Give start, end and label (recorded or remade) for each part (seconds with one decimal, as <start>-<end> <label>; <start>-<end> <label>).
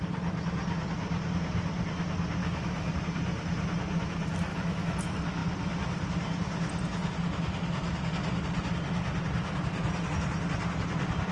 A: 0.0-2.4 recorded; 2.4-2.9 remade; 2.9-4.5 recorded; 4.5-5.0 remade; 5.0-11.3 recorded